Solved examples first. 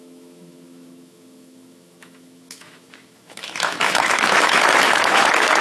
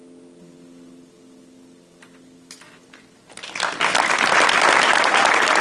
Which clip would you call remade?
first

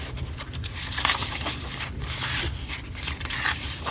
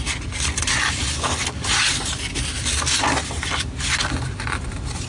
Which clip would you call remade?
first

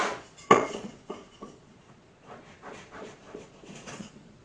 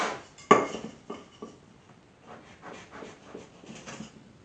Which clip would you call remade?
first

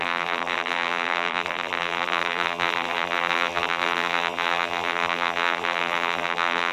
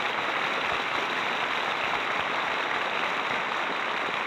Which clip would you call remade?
first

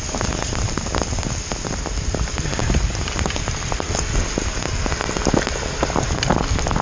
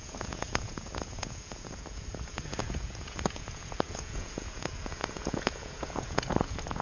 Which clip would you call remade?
second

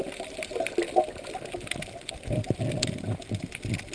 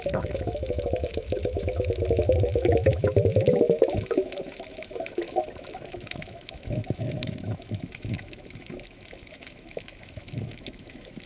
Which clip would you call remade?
second